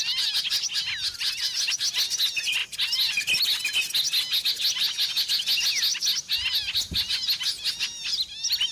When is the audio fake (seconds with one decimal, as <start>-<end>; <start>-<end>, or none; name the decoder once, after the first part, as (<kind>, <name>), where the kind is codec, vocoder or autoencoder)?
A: none